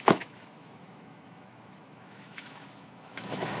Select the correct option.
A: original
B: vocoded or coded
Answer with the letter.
B